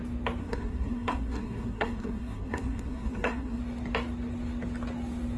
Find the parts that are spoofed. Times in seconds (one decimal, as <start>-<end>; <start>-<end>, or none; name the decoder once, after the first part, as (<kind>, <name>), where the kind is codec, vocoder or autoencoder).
0.4-3.6 (codec, SNAC)